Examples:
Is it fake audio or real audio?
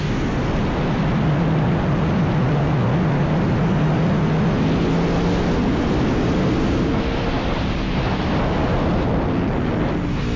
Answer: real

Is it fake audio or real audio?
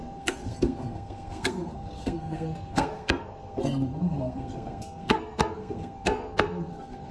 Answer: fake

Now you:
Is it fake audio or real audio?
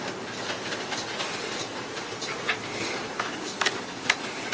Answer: real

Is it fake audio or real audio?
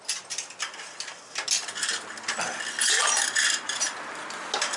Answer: real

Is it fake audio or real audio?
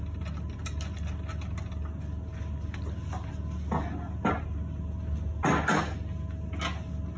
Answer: real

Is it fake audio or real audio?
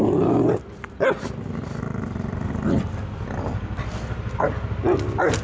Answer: real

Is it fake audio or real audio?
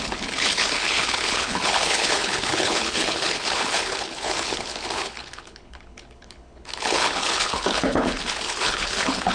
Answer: fake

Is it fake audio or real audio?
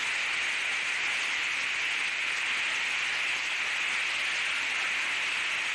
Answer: real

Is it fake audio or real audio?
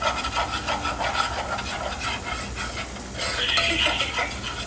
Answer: real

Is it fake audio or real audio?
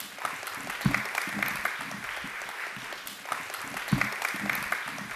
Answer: real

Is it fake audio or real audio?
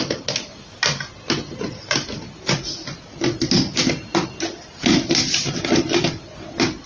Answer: real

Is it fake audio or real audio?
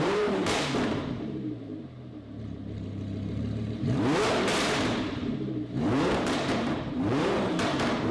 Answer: fake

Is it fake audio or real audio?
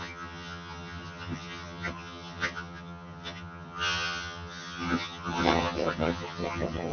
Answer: fake